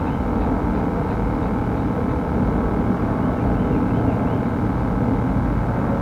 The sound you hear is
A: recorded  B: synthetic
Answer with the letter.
A